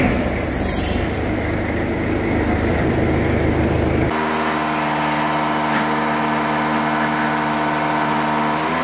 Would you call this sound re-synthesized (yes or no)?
no